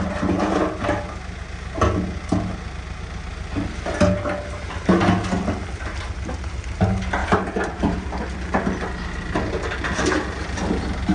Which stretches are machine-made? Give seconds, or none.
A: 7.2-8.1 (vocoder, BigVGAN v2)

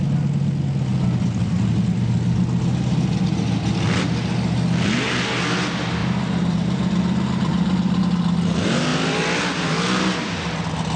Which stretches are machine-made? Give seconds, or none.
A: 6.0-8.0 (vocoder, BigVGAN v2); 8.9-9.4